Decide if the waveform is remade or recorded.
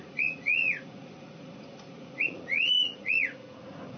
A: remade